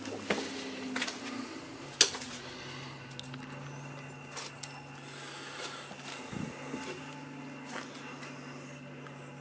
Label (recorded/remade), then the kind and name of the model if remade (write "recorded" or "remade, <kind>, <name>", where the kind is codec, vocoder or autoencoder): recorded